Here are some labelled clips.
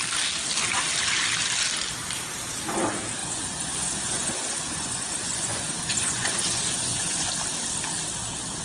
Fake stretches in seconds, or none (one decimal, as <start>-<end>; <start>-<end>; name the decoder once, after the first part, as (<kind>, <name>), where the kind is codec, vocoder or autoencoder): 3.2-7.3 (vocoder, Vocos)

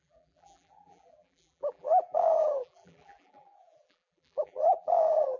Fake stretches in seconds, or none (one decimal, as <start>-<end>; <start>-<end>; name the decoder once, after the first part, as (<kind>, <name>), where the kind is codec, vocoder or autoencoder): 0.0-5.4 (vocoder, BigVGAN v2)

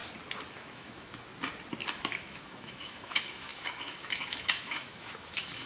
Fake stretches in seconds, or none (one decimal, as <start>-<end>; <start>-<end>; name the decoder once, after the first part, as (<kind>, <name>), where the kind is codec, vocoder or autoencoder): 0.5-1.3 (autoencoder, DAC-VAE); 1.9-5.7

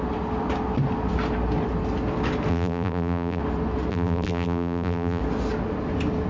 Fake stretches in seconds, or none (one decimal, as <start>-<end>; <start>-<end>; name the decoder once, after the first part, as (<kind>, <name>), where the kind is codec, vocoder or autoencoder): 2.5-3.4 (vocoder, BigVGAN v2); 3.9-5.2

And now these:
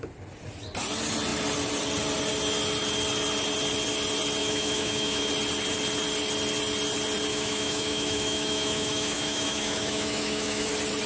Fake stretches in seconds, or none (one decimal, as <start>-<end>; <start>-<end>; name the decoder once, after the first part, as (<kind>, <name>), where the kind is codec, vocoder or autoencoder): 4.4-5.3 (autoencoder, DAC-VAE); 7.3-10.7

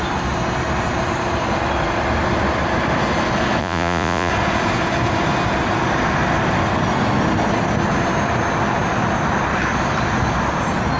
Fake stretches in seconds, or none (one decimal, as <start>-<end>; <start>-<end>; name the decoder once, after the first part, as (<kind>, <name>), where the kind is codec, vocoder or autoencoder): 3.6-4.3 (vocoder, Vocos)

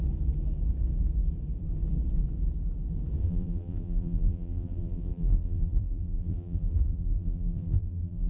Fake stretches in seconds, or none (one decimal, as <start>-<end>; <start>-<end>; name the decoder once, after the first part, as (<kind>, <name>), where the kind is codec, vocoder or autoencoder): 3.2-8.3 (vocoder, BigVGAN v2)